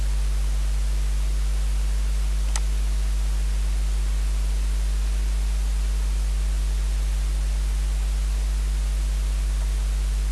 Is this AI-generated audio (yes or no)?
no